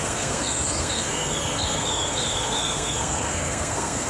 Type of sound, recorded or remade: remade